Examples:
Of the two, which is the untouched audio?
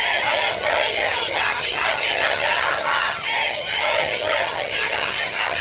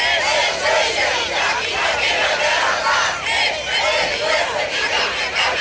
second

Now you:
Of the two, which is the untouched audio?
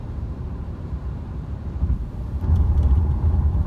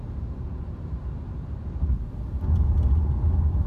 second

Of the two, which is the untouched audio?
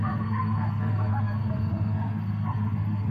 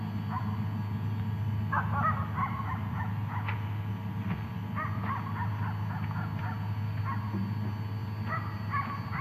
second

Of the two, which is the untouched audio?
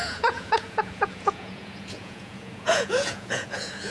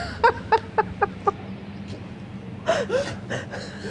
second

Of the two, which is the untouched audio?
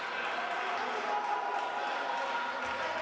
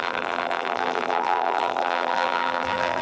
first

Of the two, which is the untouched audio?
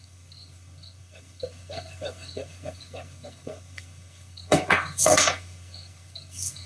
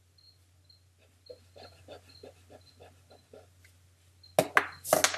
second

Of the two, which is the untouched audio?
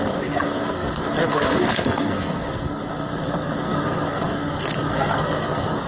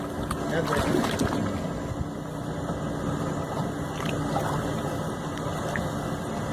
second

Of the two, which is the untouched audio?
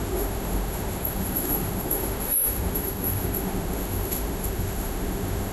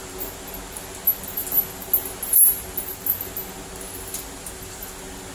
second